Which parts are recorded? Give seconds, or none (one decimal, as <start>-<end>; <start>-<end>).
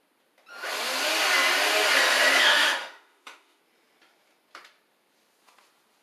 0.0-2.5; 3.6-6.0